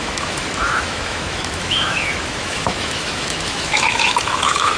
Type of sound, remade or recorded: remade